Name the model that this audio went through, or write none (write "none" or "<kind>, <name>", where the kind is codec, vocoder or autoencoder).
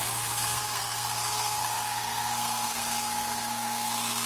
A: codec, SNAC